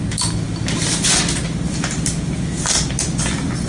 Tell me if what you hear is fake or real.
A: real